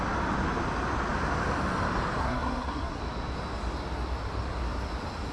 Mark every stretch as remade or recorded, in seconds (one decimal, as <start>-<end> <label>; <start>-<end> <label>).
0.0-2.2 recorded; 2.2-3.0 remade; 3.0-5.3 recorded